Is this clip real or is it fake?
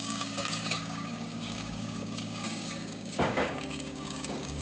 fake